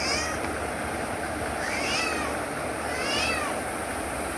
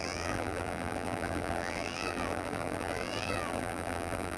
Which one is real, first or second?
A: first